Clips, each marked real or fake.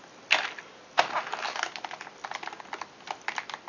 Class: real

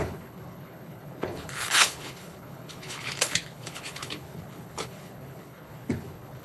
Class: fake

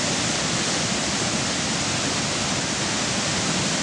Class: real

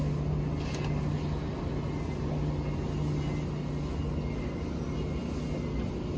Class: real